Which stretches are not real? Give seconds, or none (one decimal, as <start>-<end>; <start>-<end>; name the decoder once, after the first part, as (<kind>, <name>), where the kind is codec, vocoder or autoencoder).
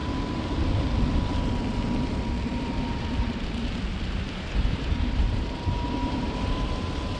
4.1-7.2 (vocoder, BigVGAN v2)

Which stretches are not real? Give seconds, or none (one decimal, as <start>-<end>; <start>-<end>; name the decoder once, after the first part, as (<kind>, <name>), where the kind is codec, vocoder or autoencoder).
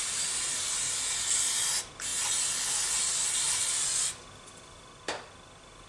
none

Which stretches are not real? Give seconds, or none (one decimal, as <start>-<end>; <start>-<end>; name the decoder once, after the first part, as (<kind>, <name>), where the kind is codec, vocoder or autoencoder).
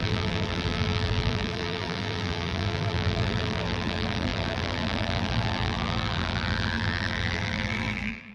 0.0-8.3 (vocoder, BigVGAN v2)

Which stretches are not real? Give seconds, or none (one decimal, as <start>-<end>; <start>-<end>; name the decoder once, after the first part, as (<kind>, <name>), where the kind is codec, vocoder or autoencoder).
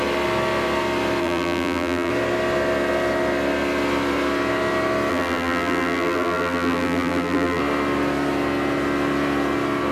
1.2-2.1 (vocoder, BigVGAN v2); 5.1-7.6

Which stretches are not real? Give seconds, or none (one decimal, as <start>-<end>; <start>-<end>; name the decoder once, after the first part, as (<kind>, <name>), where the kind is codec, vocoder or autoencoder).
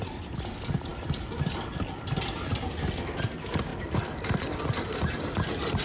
0.9-2.1 (vocoder, BigVGAN v2); 3.7-5.8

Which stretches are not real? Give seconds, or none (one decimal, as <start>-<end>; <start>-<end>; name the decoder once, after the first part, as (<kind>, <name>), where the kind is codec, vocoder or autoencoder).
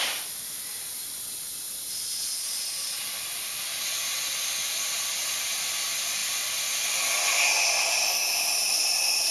3.1-3.8 (vocoder, BigVGAN v2); 6.2-7.3; 8.2-9.3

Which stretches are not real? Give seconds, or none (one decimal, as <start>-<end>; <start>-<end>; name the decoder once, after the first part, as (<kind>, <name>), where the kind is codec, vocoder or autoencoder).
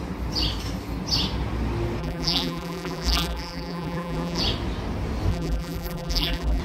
2.0-4.4 (vocoder, BigVGAN v2); 5.3-6.6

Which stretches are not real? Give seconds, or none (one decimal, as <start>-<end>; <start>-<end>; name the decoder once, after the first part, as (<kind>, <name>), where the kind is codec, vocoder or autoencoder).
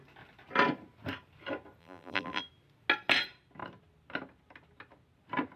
1.8-2.4 (vocoder, BigVGAN v2)